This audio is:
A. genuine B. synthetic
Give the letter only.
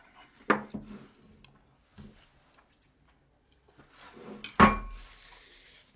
A